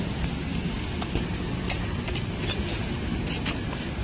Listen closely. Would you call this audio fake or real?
real